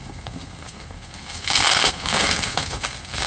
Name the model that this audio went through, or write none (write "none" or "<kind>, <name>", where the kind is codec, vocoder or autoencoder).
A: codec, SNAC